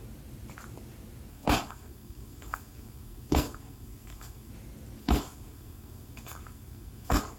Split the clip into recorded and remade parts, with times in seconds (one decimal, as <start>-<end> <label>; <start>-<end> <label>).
0.0-1.3 recorded; 1.3-4.5 remade; 4.5-5.0 recorded; 5.0-7.4 remade